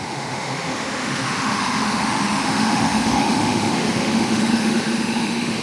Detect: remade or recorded remade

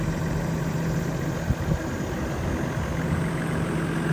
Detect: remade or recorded recorded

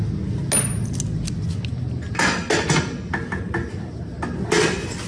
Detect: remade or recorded recorded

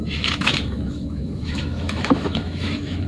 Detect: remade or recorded remade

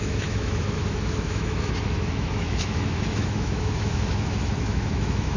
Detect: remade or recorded remade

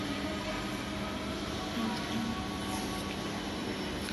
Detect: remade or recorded recorded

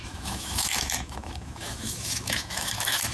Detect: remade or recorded remade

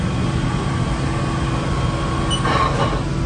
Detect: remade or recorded recorded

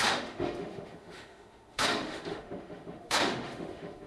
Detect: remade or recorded remade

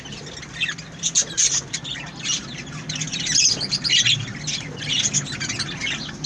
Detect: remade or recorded recorded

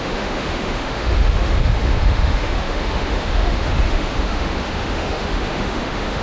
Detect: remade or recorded remade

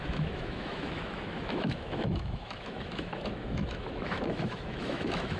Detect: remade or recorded remade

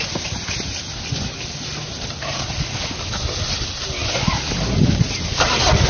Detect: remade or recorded recorded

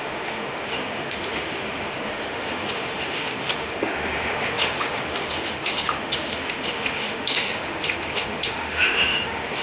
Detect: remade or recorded remade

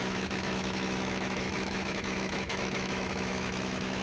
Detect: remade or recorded remade